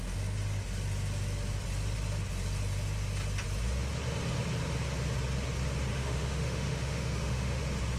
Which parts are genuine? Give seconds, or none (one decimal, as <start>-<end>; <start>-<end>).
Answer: 0.0-5.9; 7.6-8.0